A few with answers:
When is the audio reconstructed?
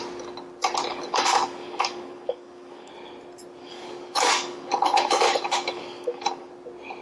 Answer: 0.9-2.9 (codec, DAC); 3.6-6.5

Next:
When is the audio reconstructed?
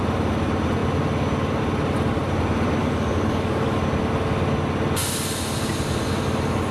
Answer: 2.8-3.8 (codec, DAC)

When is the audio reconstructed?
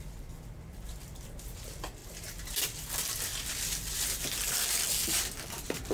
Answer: 0.0-2.0 (vocoder, BigVGAN v2); 2.9-3.3; 5.3-5.9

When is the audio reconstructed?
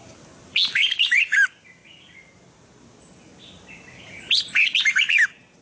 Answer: 0.7-1.8 (vocoder, BigVGAN v2)